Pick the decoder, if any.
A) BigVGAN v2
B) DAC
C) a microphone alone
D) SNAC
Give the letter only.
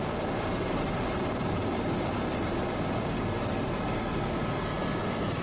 A